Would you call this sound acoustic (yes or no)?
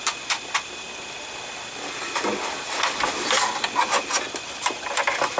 yes